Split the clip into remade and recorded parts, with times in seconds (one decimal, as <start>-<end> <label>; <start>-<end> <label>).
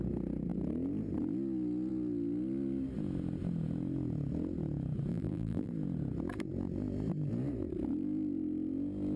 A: 0.0-5.1 recorded; 5.1-5.7 remade; 5.7-9.2 recorded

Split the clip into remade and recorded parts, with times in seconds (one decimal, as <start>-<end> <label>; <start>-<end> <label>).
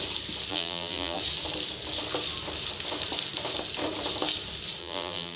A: 0.0-0.5 recorded; 0.5-1.2 remade; 1.2-4.8 recorded; 4.8-5.4 remade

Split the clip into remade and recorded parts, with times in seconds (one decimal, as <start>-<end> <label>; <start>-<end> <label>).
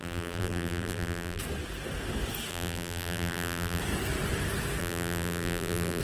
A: 0.0-1.4 remade; 1.4-2.5 recorded; 2.5-3.8 remade; 3.8-4.8 recorded; 4.8-6.0 remade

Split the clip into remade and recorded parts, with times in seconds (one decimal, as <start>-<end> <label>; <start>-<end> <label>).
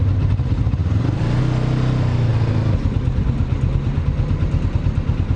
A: 0.0-0.8 recorded; 0.8-1.4 remade; 1.4-5.4 recorded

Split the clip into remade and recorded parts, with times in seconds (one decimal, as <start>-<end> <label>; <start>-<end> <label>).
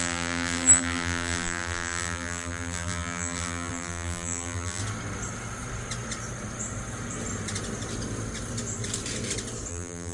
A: 0.0-4.8 remade; 4.8-9.7 recorded; 9.7-10.1 remade